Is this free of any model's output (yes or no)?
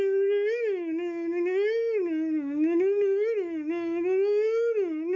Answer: no